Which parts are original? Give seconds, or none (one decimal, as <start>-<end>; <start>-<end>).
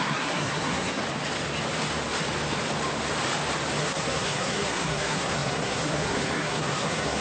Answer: 1.0-3.8